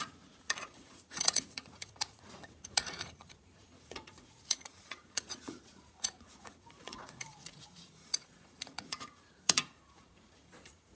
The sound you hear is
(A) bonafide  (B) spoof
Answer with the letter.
B